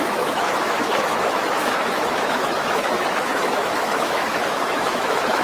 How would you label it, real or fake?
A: fake